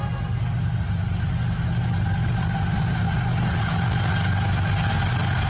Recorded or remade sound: recorded